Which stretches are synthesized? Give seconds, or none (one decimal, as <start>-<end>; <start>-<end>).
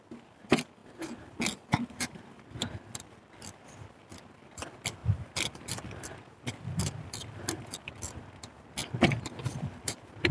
0.0-8.8; 9.7-10.3